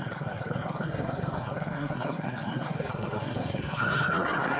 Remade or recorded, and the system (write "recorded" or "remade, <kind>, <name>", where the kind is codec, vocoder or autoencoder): remade, codec, SNAC